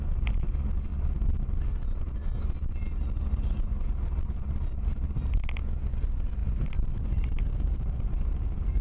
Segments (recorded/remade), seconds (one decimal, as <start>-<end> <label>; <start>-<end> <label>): 0.0-8.8 recorded